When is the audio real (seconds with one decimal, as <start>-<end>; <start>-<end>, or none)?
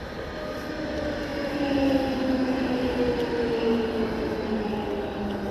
0.0-5.5